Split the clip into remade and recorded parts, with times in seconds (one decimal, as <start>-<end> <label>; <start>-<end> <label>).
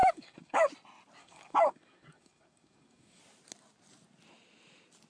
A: 0.0-0.7 remade; 0.7-1.2 recorded; 1.2-3.2 remade; 3.2-5.1 recorded